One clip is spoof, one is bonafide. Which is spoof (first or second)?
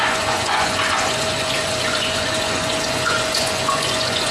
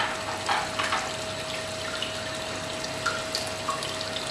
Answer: first